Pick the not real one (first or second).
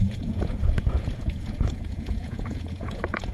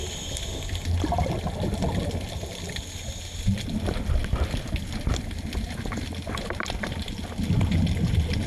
first